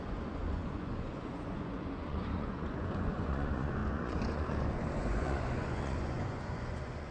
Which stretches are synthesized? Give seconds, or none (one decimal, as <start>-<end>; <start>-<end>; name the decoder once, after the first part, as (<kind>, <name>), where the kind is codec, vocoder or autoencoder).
0.0-7.1 (vocoder, Vocos)